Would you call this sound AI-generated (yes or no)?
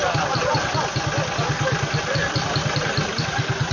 no